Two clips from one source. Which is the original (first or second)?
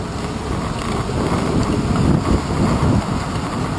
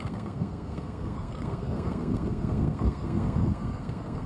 first